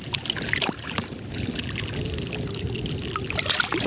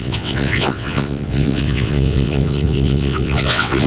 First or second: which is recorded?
first